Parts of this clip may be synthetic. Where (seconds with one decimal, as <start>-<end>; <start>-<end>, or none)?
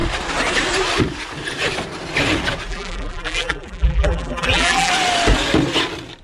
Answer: 2.7-4.9